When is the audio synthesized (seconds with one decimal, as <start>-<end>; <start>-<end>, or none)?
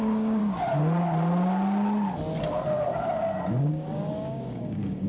0.0-0.4; 3.5-5.1